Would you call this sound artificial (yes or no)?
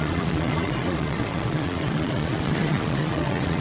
yes